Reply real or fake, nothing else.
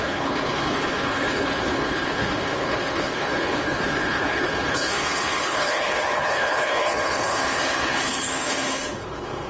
fake